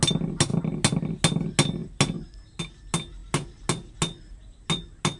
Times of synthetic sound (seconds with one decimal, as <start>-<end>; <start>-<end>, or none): none